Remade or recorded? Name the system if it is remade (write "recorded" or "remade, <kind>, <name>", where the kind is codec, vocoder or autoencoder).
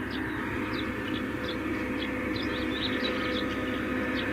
recorded